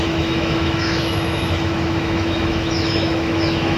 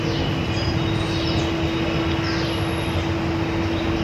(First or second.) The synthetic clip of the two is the first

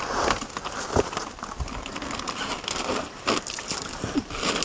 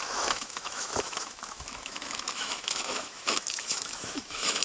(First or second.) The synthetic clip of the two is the second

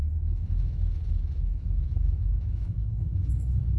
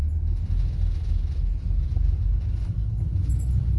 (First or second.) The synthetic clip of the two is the first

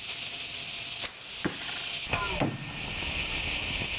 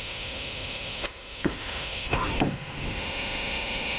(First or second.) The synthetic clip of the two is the second